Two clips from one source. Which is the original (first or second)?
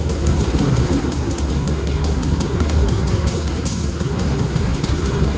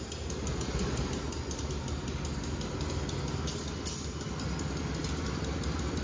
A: second